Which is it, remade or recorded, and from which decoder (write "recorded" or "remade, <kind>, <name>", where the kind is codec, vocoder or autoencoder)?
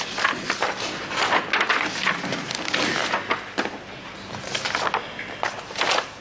recorded